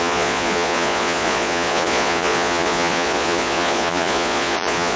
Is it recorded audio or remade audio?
remade